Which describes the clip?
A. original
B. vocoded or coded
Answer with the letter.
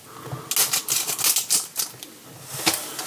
A